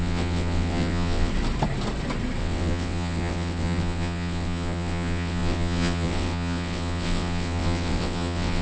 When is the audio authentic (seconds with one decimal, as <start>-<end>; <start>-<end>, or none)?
1.3-2.4